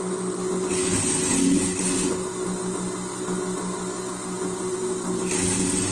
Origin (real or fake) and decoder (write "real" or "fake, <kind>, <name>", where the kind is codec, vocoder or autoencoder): real